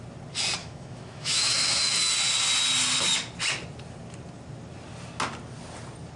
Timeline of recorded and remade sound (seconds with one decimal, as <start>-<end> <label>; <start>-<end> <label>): 0.0-0.6 recorded; 0.6-2.1 remade; 2.1-6.2 recorded